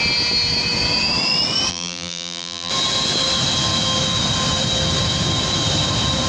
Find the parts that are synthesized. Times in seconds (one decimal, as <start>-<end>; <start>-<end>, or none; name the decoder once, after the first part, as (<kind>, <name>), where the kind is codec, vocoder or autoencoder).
1.7-2.7 (vocoder, BigVGAN v2)